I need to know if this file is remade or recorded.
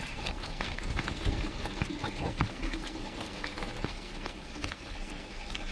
remade